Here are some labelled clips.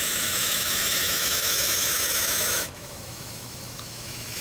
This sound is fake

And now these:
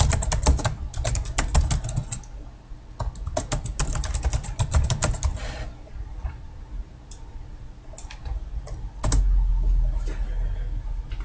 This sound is real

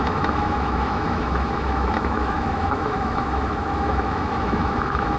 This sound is fake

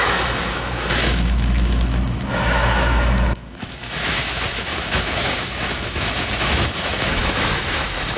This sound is fake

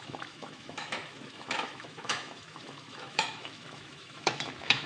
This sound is fake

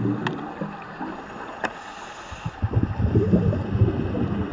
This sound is real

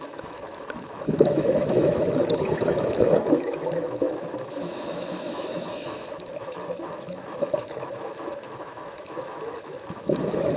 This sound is fake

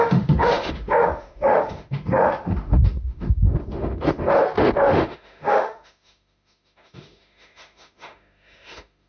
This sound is fake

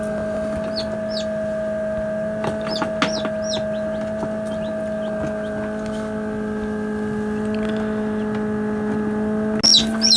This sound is real